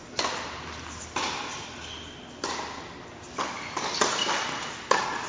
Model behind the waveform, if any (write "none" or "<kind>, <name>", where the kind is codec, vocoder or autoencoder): none